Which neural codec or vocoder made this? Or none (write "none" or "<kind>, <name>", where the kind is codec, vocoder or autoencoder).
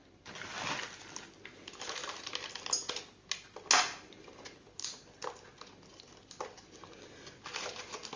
none